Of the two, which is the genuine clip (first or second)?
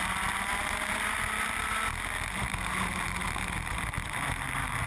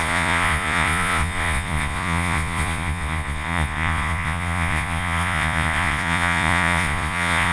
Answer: first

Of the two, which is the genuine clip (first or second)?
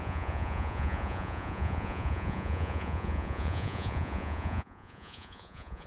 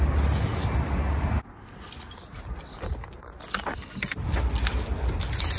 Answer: second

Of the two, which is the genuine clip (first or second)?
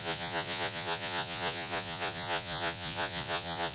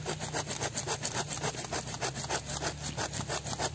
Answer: second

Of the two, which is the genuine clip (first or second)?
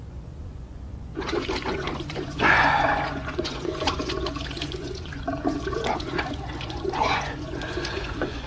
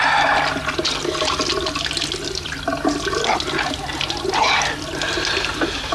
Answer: second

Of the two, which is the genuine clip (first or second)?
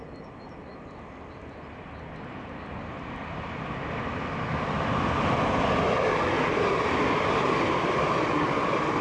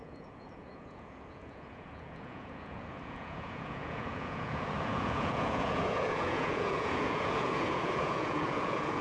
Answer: first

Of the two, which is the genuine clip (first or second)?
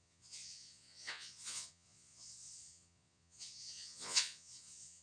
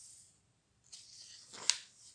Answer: second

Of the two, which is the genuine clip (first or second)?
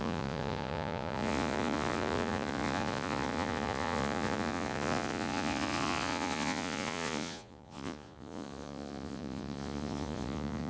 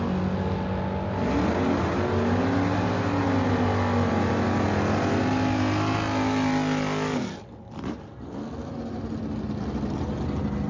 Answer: second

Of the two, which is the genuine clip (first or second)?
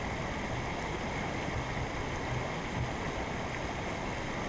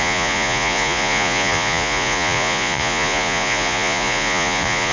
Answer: first